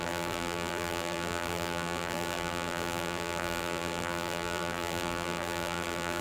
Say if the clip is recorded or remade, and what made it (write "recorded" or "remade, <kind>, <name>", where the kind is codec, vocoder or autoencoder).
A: remade, vocoder, BigVGAN v2